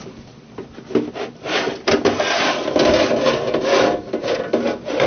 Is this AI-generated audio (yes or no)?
no